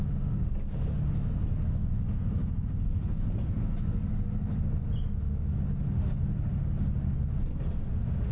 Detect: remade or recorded recorded